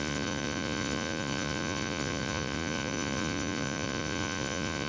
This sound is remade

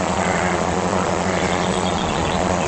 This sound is remade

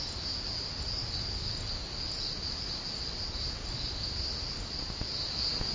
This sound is recorded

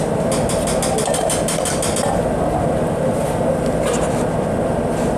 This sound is recorded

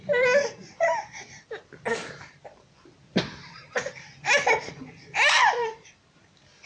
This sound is remade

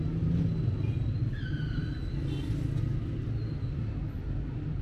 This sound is recorded